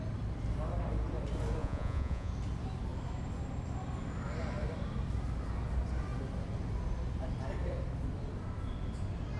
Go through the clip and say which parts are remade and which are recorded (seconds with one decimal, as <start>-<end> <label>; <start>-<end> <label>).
0.0-1.6 recorded; 1.6-2.3 remade; 2.3-9.4 recorded